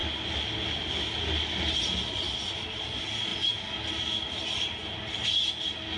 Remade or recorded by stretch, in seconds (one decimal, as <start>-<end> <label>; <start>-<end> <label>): 0.0-6.0 recorded